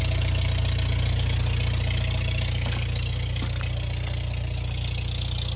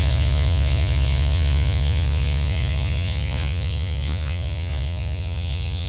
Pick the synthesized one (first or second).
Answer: second